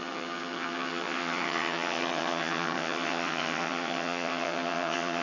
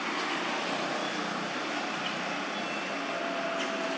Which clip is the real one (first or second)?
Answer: second